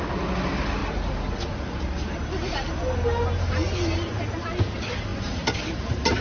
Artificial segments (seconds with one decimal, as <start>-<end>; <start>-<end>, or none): none